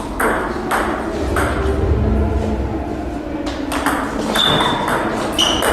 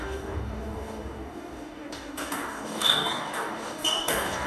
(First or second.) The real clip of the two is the first